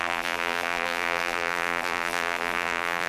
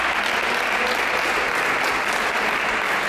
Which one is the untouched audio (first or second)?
second